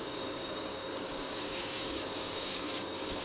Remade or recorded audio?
remade